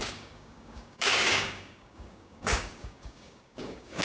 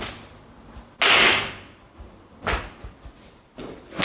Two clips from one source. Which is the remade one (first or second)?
first